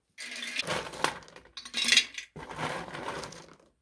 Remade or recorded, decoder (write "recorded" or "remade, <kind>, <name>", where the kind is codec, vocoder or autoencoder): recorded